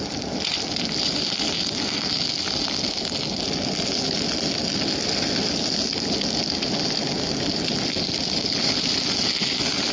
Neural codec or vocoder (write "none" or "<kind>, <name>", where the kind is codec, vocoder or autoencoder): none